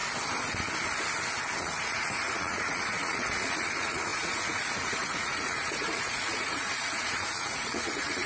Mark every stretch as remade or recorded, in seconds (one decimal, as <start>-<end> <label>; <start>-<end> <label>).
0.0-1.6 recorded; 1.6-8.3 remade